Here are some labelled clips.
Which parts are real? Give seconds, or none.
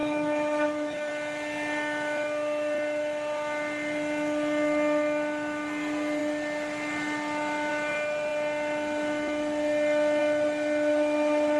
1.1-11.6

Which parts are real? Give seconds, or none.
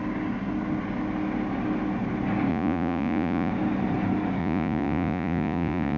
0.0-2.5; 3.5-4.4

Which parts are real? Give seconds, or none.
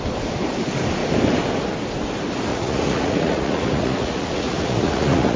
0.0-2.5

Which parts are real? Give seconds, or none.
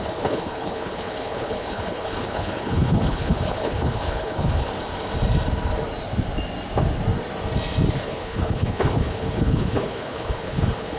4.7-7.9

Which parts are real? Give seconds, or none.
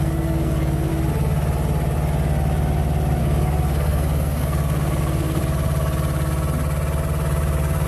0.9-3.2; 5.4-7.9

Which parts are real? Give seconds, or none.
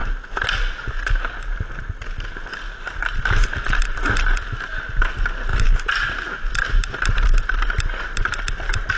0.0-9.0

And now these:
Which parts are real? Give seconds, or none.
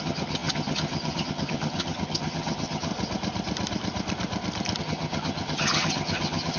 2.9-4.8